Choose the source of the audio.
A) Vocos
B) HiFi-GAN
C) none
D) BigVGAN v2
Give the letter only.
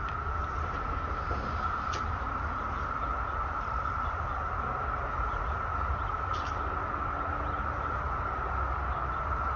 C